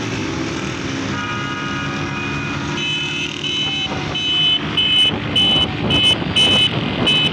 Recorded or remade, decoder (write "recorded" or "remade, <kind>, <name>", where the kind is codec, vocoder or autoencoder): recorded